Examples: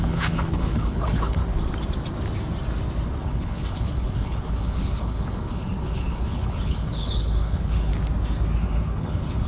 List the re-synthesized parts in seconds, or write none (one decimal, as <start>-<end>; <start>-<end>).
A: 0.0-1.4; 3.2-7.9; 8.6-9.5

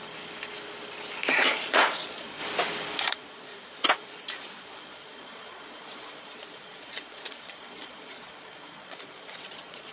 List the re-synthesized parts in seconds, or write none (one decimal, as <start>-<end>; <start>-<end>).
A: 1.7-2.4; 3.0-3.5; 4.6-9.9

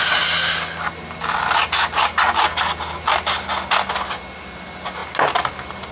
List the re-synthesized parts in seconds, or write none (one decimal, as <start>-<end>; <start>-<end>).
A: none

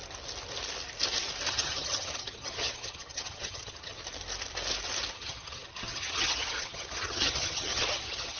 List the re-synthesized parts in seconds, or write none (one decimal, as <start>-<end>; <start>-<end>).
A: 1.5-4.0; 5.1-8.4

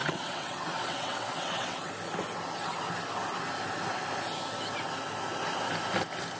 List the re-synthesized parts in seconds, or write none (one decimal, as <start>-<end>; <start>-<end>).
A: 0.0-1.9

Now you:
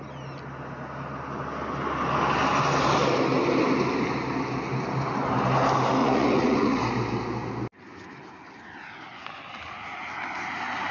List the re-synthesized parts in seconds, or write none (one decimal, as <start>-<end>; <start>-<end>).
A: 6.0-6.8